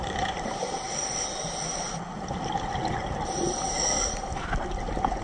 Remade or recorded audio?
recorded